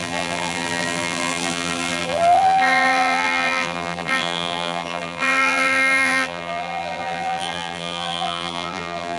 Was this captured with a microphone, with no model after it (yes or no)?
no